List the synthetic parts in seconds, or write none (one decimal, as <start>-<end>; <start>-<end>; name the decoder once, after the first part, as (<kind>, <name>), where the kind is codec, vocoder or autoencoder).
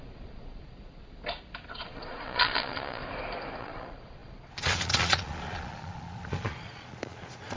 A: 0.0-1.0 (vocoder, Vocos); 1.7-3.0; 3.6-7.6